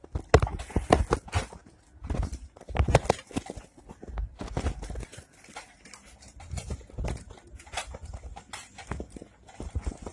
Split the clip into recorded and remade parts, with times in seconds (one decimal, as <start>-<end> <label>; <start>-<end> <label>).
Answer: 0.0-1.6 recorded; 1.6-6.8 remade; 6.8-10.1 recorded